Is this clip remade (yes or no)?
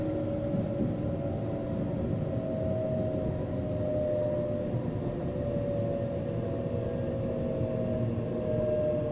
no